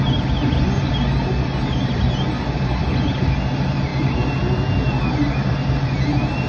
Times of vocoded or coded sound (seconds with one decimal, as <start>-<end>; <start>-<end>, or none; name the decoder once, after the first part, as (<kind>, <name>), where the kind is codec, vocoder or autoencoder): none